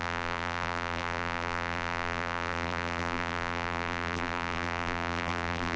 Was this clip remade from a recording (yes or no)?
yes